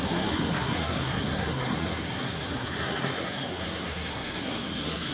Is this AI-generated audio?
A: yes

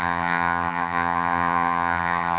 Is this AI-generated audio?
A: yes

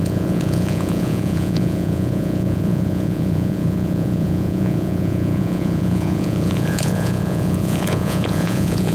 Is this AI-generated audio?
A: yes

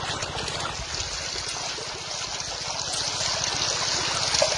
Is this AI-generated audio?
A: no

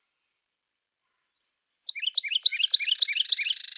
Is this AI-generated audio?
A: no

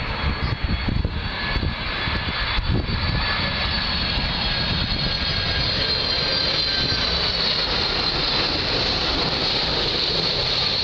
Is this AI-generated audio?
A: no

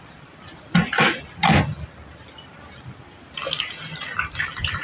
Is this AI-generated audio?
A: no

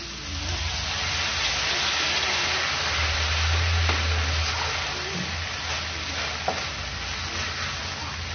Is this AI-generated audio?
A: no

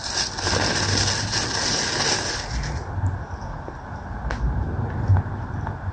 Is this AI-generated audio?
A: no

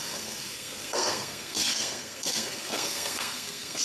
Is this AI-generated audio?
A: yes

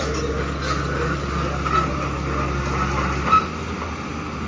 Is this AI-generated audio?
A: no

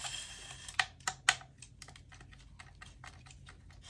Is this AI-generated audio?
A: no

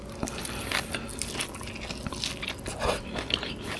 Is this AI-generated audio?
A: no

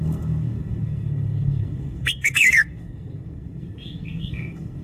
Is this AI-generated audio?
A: yes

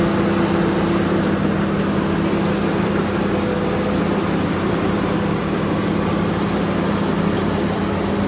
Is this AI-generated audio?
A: no